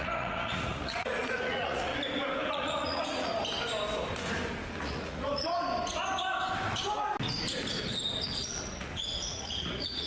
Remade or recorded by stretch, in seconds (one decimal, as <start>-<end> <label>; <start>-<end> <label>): 0.0-1.9 remade; 1.9-2.5 recorded; 2.5-3.3 remade; 3.3-4.8 recorded; 4.8-5.7 remade; 5.7-8.6 recorded; 8.6-10.1 remade